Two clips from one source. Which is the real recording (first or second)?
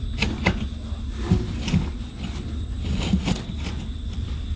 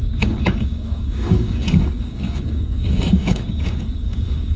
first